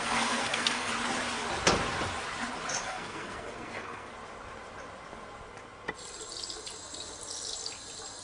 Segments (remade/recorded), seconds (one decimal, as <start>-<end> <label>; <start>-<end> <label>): 0.0-0.9 remade; 0.9-2.8 recorded; 2.8-4.1 remade; 4.1-8.2 recorded